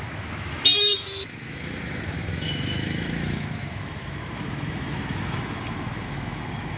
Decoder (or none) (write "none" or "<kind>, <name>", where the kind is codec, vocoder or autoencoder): autoencoder, DAC-VAE